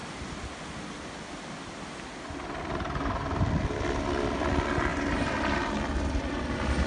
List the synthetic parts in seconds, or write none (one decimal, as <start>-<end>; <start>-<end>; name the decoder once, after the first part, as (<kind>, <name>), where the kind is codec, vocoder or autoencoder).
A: 4.9-5.7 (vocoder, BigVGAN v2)